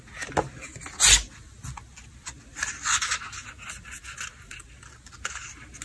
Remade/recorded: recorded